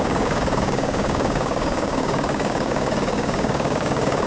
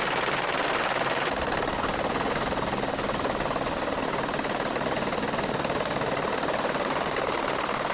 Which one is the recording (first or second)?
second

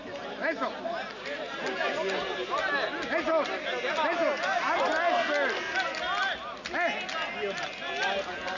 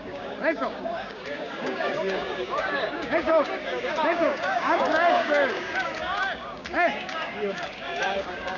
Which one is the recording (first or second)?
first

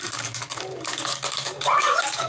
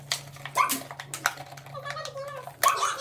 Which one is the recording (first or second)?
second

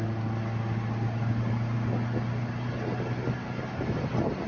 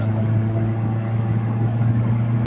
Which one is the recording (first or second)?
first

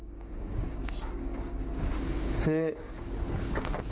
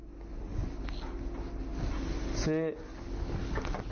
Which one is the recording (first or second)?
second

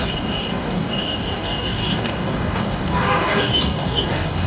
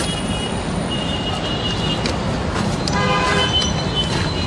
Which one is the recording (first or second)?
second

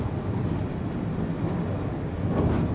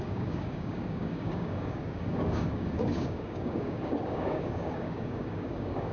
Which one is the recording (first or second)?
first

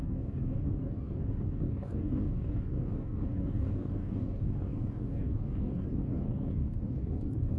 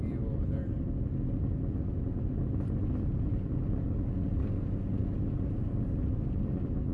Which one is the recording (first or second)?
second